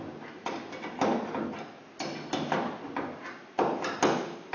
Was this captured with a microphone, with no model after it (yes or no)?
yes